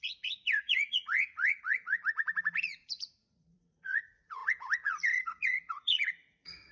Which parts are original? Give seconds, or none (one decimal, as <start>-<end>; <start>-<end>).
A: none